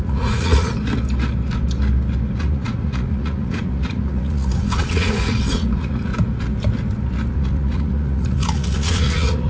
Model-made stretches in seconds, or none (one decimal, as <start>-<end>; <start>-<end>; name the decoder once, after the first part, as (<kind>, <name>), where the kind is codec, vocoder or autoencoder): 0.0-0.7 (vocoder, Vocos); 2.4-6.1; 7.3-9.5